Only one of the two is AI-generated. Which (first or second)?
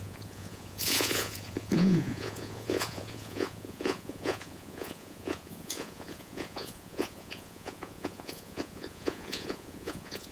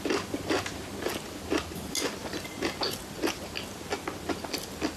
first